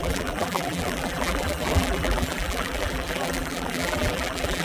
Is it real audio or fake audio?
fake